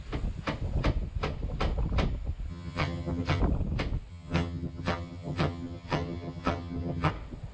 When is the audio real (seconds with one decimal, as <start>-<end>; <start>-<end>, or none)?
0.0-2.5; 3.4-4.1; 7.1-7.5